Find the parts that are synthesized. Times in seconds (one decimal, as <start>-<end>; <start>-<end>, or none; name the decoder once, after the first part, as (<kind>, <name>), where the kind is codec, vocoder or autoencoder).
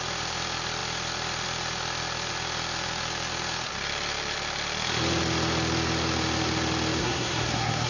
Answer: 7.0-7.9 (codec, SNAC)